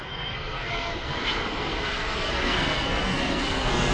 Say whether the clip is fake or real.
fake